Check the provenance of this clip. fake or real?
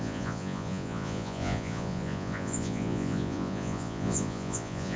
fake